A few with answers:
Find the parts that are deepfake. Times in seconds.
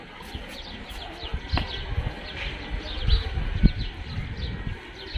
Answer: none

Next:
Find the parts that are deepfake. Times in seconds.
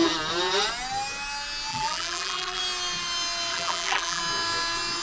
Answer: 1.7-2.6 (vocoder, BigVGAN v2); 3.5-4.2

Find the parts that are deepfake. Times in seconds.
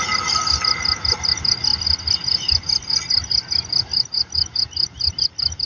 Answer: none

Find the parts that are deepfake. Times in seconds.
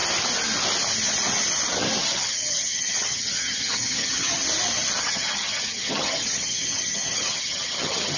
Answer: 2.0-4.4 (vocoder, HiFi-GAN); 5.0-8.2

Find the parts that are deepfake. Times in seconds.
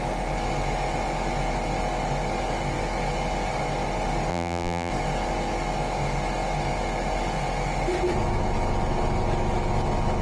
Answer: 4.3-4.9 (vocoder, BigVGAN v2)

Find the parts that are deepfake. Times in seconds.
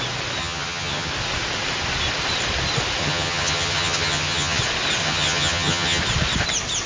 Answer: 0.4-1.1 (vocoder, HiFi-GAN); 3.0-4.6; 5.0-6.0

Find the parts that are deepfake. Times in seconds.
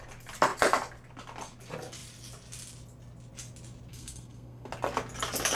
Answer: 3.9-4.7 (codec, SNAC)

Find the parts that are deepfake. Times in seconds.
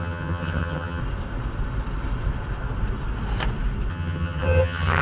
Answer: 0.0-1.0 (vocoder, HiFi-GAN); 3.9-5.0